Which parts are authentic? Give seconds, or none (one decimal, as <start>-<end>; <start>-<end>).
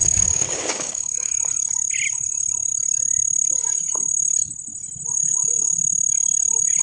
1.3-6.8